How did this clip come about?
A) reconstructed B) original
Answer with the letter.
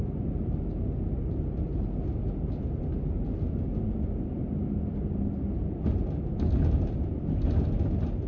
B